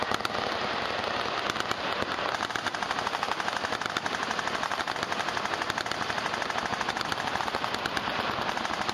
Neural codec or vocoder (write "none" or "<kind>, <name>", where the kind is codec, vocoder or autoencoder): none